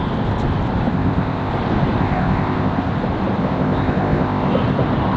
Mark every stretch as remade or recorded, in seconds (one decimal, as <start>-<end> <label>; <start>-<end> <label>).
0.0-0.9 recorded; 0.9-1.5 remade; 1.5-2.0 recorded; 2.0-2.9 remade; 2.9-3.4 recorded; 3.4-4.5 remade; 4.5-5.2 recorded

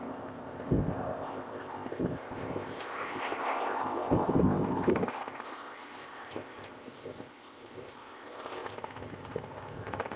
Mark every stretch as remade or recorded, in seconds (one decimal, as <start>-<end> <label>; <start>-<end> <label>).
0.0-10.2 remade

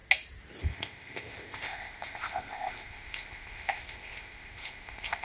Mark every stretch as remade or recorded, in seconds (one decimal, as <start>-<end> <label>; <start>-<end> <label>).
0.0-0.6 recorded; 0.6-5.2 remade

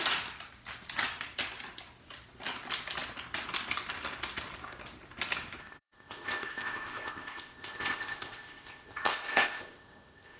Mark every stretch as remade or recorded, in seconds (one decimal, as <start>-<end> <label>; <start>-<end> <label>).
0.0-5.6 recorded; 5.6-10.4 remade